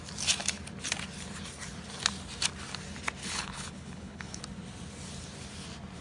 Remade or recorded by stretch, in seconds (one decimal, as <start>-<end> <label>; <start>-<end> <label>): 0.0-3.2 recorded; 3.2-4.4 remade; 4.4-6.0 recorded